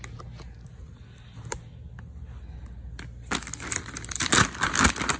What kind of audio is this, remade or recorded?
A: recorded